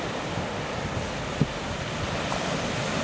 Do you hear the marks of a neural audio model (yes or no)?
no